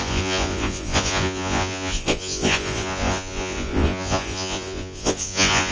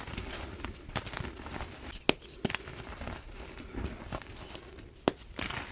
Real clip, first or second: second